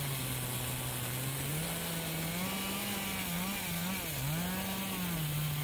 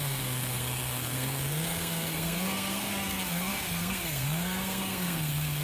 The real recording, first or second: first